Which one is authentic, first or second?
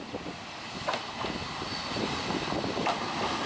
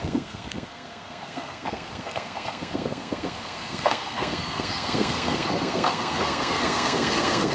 first